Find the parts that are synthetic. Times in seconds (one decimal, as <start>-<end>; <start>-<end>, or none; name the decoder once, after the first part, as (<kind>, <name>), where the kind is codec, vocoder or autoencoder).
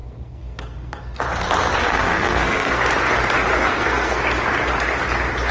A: 0.0-1.2 (codec, SNAC); 1.8-2.9; 3.5-4.2